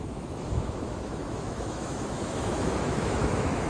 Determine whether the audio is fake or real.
fake